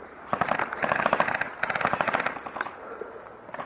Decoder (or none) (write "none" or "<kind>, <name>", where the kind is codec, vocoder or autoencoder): none